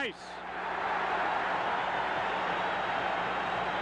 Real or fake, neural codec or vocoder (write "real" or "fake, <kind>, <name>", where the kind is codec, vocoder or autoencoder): real